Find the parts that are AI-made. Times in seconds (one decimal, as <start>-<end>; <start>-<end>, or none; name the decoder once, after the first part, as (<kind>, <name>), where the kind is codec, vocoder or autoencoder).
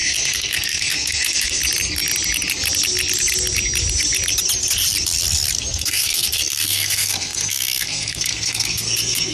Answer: 0.0-1.6 (codec, SNAC); 5.7-9.3